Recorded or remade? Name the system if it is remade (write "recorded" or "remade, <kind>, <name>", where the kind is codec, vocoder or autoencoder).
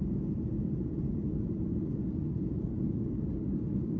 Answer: recorded